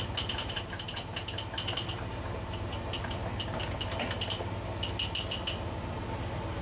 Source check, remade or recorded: recorded